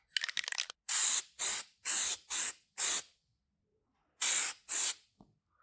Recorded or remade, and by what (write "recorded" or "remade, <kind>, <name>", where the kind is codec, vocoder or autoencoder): recorded